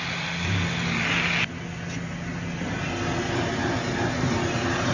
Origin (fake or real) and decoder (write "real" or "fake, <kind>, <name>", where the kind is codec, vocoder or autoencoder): real